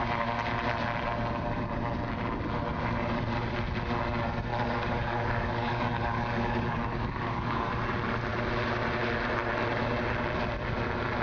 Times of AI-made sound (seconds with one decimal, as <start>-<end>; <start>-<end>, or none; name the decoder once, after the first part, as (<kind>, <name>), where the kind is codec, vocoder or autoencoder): 4.5-7.7 (codec, DAC)